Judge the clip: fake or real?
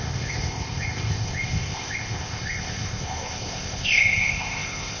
fake